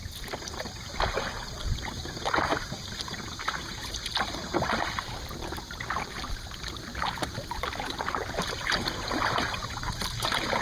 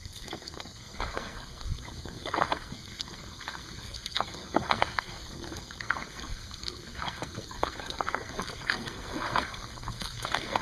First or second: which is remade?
second